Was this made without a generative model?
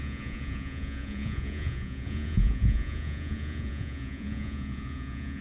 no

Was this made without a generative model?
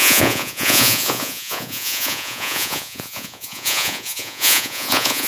no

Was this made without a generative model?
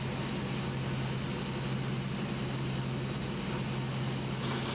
yes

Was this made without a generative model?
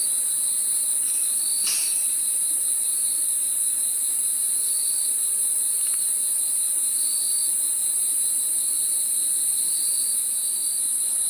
yes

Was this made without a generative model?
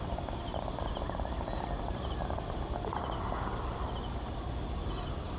yes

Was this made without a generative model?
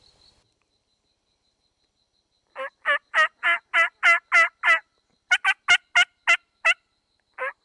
yes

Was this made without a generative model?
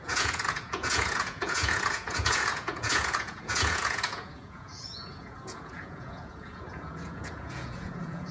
no